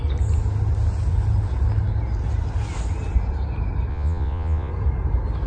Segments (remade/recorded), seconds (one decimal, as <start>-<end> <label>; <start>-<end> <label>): 0.0-3.9 recorded; 3.9-4.7 remade; 4.7-5.5 recorded